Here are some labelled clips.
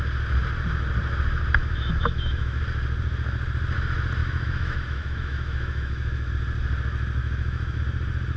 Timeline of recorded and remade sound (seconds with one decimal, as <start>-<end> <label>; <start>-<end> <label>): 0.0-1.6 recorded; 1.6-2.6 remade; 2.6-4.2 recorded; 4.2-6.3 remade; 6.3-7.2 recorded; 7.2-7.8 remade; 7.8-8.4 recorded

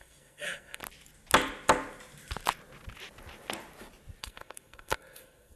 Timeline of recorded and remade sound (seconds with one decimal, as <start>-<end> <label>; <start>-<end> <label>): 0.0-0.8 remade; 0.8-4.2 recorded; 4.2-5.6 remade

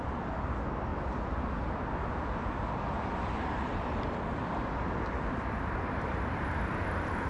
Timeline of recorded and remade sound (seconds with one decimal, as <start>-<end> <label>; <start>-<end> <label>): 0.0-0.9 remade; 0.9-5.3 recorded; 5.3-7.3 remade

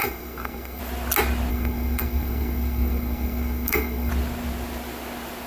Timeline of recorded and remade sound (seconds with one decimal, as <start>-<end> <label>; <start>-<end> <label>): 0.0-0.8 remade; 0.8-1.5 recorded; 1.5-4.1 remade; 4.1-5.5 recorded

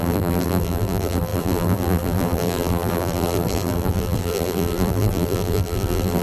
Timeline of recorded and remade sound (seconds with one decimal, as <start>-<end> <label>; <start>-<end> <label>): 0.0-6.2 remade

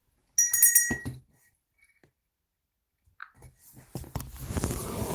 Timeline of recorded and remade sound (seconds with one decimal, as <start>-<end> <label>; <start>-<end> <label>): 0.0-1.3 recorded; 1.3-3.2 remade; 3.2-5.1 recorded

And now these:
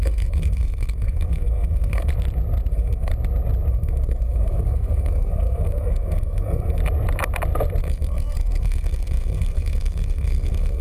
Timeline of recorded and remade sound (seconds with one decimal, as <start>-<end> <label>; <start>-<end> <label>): 0.0-2.1 remade; 2.1-2.7 recorded; 2.7-3.1 remade; 3.1-3.7 recorded; 3.7-6.8 remade; 6.8-7.8 recorded; 7.8-10.8 remade